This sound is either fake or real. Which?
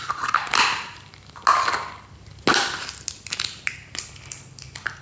real